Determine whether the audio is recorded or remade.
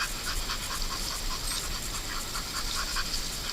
recorded